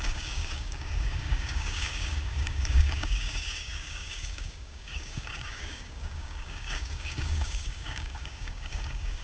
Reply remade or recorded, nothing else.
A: remade